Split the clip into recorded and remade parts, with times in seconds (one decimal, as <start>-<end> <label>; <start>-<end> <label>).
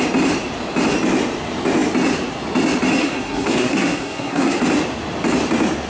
0.0-3.0 recorded; 3.0-4.6 remade; 4.6-5.9 recorded